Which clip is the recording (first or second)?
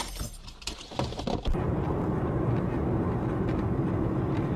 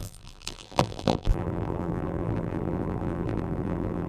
first